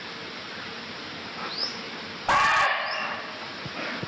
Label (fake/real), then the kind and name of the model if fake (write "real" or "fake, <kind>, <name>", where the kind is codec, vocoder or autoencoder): real